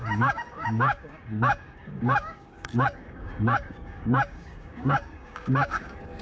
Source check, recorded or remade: remade